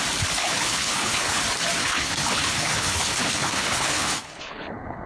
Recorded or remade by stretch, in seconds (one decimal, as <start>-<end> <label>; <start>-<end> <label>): 0.0-0.4 recorded; 0.4-1.4 remade; 1.4-1.8 recorded; 1.8-5.1 remade